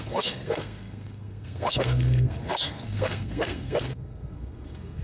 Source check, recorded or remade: remade